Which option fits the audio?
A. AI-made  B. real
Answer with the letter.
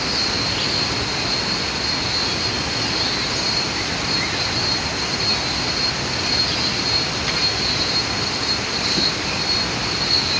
B